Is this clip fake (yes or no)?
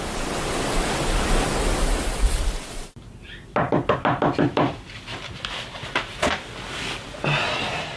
no